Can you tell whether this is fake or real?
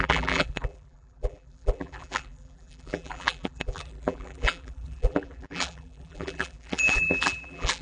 fake